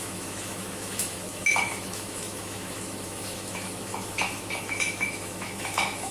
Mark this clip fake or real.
fake